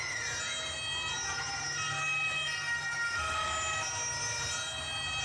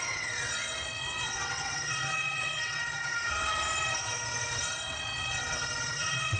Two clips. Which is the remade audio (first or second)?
second